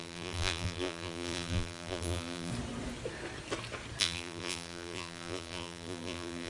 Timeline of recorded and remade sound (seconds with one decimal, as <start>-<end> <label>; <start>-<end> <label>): 0.0-2.5 remade; 2.5-4.0 recorded; 4.0-6.5 remade